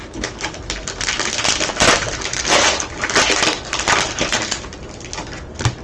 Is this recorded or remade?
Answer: recorded